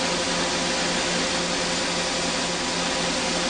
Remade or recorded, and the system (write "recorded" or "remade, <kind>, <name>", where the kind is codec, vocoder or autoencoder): recorded